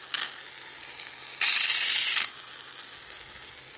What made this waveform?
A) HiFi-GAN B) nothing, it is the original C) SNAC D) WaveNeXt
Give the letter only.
B